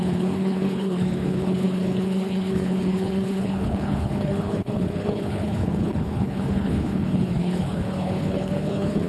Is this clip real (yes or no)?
no